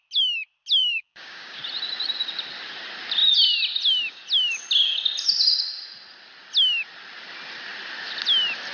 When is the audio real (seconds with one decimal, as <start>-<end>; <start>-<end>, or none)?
0.0-0.8; 1.6-8.7